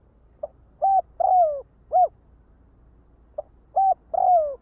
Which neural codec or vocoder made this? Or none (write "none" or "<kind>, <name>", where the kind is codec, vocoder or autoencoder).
none